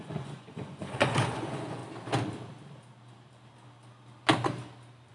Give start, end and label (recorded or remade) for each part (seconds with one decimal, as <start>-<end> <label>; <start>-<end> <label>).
0.0-1.8 remade; 1.8-5.1 recorded